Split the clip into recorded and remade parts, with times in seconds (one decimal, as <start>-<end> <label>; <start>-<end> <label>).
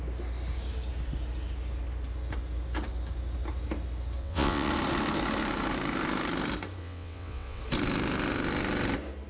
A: 0.0-4.2 recorded; 4.2-4.7 remade; 4.7-6.8 recorded; 6.8-7.6 remade; 7.6-9.3 recorded